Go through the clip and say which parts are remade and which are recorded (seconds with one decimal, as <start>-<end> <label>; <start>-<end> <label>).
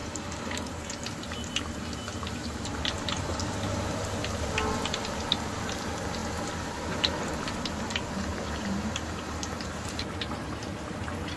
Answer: 0.0-0.8 remade; 0.8-2.1 recorded; 2.1-3.4 remade; 3.4-8.3 recorded; 8.3-10.5 remade; 10.5-11.4 recorded